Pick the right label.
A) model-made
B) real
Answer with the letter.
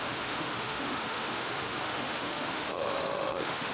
A